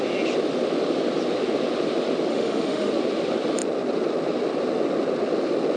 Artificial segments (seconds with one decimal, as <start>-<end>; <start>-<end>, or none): 2.3-2.9